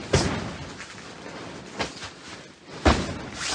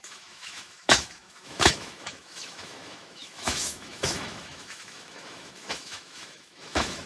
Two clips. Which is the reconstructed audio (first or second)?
second